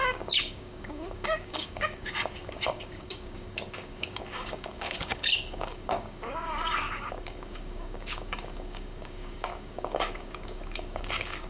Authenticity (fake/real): fake